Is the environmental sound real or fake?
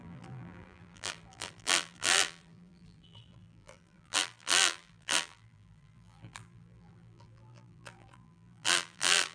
fake